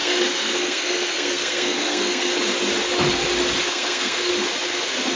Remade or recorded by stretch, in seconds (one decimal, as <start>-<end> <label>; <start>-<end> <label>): 0.0-2.3 remade; 2.3-3.6 recorded; 3.6-4.3 remade; 4.3-5.2 recorded